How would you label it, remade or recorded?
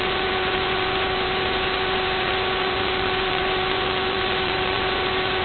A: remade